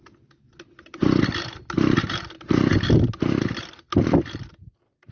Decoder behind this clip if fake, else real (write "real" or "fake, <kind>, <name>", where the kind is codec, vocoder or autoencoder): real